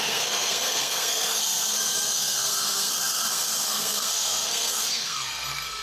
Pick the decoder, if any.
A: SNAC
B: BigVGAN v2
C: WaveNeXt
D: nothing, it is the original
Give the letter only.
A